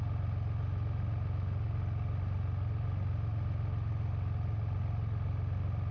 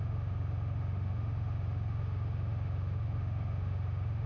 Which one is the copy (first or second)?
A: second